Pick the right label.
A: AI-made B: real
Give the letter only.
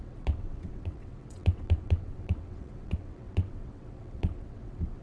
A